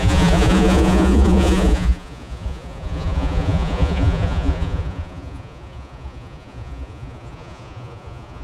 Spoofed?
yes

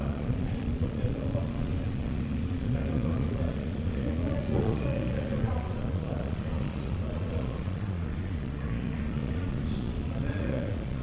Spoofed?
yes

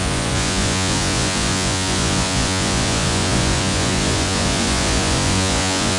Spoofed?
yes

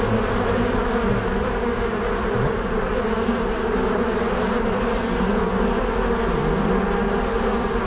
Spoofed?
no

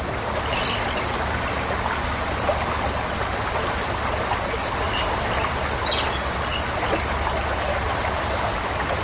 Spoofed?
no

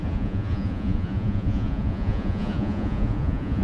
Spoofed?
yes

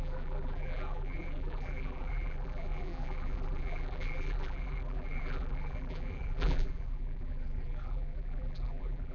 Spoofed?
yes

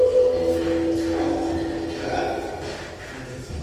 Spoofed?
no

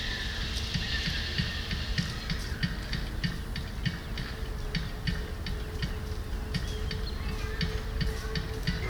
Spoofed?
no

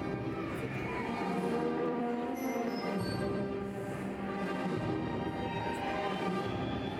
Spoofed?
yes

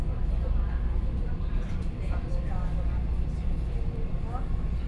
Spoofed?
no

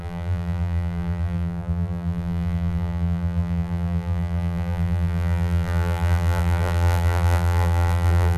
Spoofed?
yes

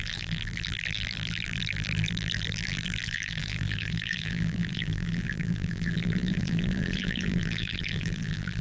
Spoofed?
yes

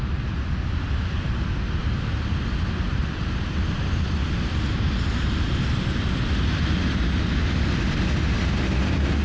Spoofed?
no